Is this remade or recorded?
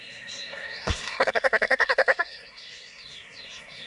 remade